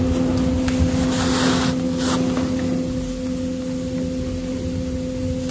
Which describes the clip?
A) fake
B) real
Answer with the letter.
B